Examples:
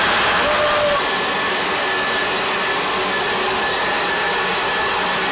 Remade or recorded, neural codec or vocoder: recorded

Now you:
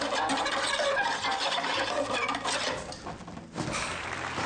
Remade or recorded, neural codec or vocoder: recorded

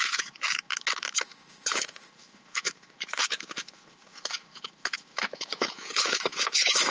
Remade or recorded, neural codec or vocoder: remade, autoencoder, DAC-VAE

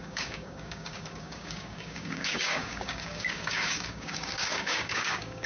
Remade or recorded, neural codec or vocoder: remade, codec, DAC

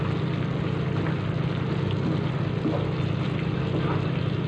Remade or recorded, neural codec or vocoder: recorded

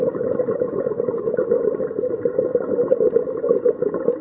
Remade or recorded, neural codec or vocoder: recorded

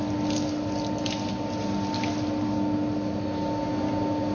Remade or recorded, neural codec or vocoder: recorded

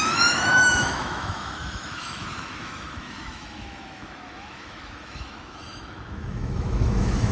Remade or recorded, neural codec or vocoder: remade, autoencoder, DAC-VAE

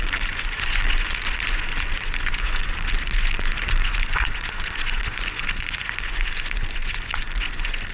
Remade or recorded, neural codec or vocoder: remade, vocoder, Vocos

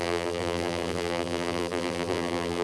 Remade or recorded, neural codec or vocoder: remade, vocoder, BigVGAN v2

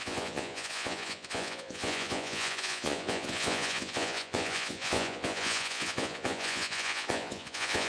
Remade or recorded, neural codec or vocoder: remade, vocoder, Vocos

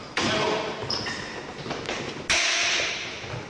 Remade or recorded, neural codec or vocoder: recorded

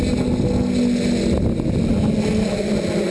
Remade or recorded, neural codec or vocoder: recorded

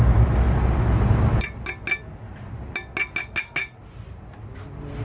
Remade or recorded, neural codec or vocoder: recorded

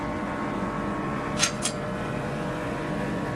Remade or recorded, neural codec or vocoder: remade, vocoder, Vocos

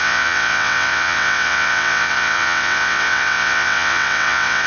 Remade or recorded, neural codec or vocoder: remade, vocoder, WaveNeXt